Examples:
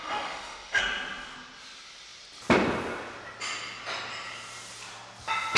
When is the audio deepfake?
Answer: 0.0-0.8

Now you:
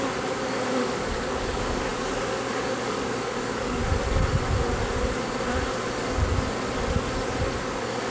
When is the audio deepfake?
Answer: 0.0-3.8; 7.6-8.1

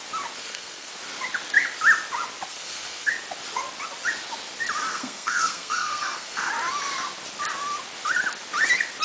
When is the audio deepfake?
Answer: 0.4-0.9; 2.5-3.1; 4.9-6.5

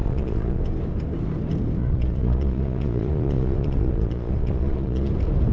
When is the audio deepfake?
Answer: 0.0-0.6; 1.8-5.1

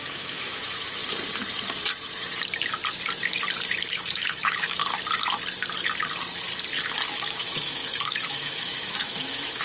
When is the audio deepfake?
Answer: 0.0-1.0; 3.9-4.8; 7.1-9.6

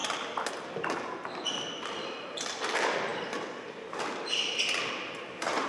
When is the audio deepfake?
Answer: none

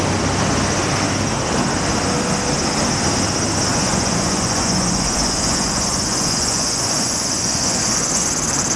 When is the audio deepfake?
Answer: 3.7-8.3